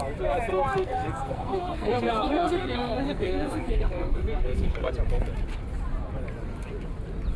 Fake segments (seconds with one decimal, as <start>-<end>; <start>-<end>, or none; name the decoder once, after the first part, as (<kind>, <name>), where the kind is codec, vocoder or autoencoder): 0.5-4.9 (codec, SNAC)